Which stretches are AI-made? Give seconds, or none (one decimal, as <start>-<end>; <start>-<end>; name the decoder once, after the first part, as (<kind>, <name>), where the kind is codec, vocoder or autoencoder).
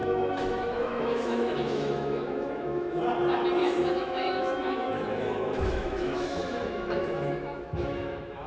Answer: 0.0-3.0 (autoencoder, DAC-VAE); 3.6-8.5